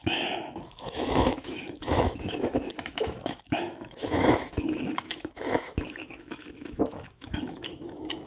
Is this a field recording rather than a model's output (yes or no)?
no